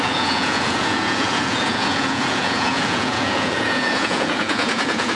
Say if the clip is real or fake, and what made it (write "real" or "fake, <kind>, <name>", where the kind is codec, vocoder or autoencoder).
fake, vocoder, Vocos